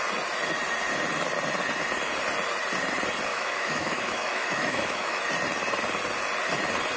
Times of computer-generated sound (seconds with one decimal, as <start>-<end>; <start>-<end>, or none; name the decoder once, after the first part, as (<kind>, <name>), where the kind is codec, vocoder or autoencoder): 3.3-5.2 (autoencoder, DAC-VAE)